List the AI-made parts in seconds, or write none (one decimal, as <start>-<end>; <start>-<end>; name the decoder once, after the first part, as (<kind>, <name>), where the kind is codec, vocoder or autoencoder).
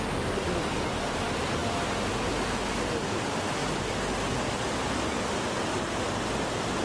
none